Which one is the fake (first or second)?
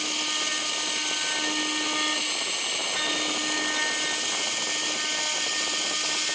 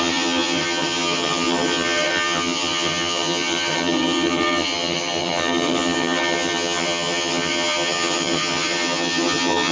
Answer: second